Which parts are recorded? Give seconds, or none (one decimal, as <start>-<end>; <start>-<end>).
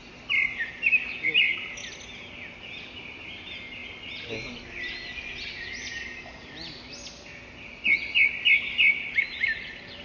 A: 0.0-10.0